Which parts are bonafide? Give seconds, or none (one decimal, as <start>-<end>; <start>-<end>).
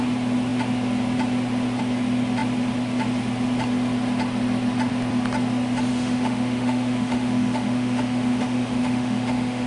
0.0-5.9